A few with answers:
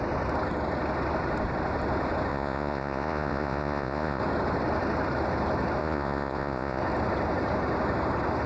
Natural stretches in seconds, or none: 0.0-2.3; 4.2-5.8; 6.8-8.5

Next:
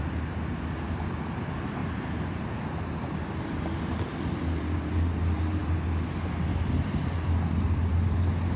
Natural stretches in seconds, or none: 0.0-8.6